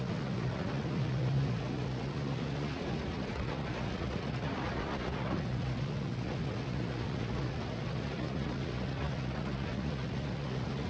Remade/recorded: remade